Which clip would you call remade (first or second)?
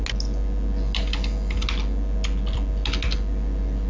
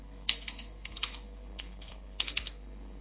second